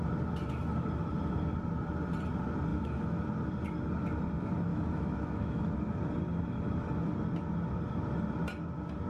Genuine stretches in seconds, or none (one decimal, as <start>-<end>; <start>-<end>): 0.0-2.7; 3.2-4.7; 5.7-9.1